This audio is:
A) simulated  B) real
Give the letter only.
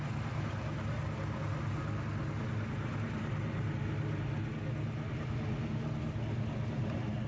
B